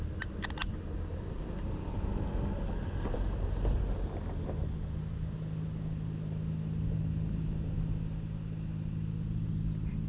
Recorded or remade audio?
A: recorded